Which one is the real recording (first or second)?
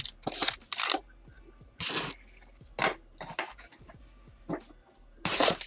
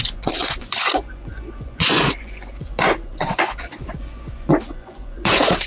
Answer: first